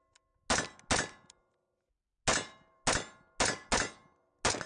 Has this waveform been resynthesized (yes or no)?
no